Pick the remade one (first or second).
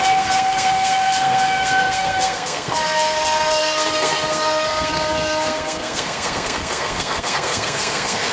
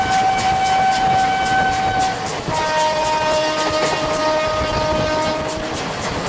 first